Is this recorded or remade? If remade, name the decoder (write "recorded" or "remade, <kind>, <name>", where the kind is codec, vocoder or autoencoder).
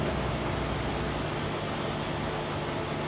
recorded